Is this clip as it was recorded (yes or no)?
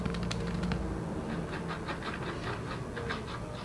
yes